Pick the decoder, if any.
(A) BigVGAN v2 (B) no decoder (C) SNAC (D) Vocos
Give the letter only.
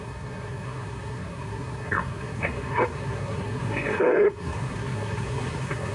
C